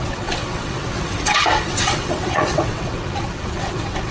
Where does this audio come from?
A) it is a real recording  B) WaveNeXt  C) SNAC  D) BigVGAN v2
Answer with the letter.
B